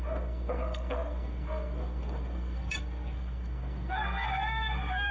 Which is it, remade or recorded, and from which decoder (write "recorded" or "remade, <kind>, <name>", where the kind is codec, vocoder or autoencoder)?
remade, codec, SNAC